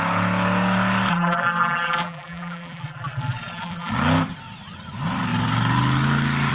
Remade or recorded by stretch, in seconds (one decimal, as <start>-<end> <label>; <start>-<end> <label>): 0.0-1.1 recorded; 1.1-3.9 remade; 3.9-6.5 recorded